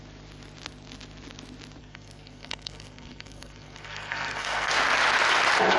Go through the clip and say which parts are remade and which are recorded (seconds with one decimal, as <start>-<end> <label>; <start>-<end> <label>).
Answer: 0.0-1.8 recorded; 1.8-4.7 remade; 4.7-5.8 recorded